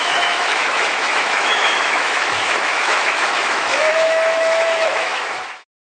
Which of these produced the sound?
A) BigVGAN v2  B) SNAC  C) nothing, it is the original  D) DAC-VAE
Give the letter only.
D